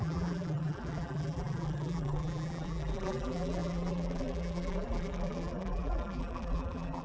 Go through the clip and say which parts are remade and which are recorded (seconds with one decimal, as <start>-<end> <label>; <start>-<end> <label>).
0.0-7.0 remade